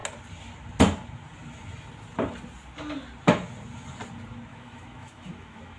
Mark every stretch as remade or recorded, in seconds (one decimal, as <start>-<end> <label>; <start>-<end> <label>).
0.0-4.5 recorded; 4.5-5.8 remade